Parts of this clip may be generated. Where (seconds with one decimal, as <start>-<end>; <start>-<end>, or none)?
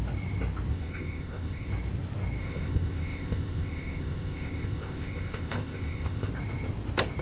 0.7-1.7; 2.4-6.3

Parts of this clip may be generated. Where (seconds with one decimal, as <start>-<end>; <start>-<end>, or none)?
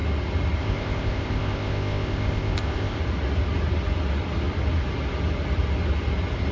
0.6-3.0